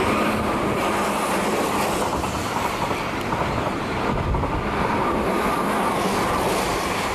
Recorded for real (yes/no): no